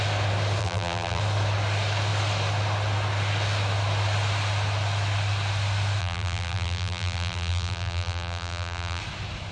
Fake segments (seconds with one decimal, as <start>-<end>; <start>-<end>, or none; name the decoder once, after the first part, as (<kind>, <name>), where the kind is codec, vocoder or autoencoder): 0.6-1.2 (vocoder, BigVGAN v2); 6.0-9.0

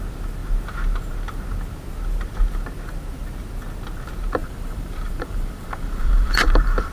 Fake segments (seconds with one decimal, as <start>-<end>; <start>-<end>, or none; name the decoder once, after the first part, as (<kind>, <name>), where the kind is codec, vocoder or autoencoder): 4.4-6.9 (vocoder, BigVGAN v2)

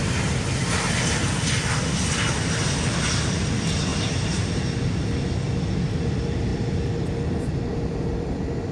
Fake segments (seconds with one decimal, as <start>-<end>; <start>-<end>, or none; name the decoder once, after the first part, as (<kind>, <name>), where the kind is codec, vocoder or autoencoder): 3.9-4.6 (vocoder, BigVGAN v2)

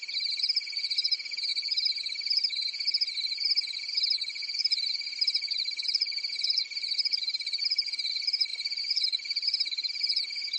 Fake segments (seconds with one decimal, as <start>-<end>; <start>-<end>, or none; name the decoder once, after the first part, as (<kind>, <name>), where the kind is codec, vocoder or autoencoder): 4.4-8.1 (vocoder, BigVGAN v2); 8.5-10.6